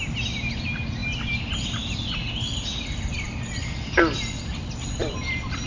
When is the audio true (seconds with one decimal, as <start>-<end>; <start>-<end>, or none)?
0.0-5.7